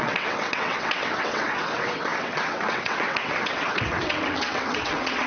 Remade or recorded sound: remade